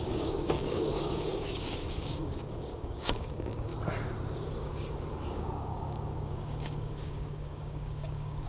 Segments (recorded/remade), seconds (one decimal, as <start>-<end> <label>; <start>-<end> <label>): 0.0-3.7 remade; 3.7-5.3 recorded; 5.3-8.5 remade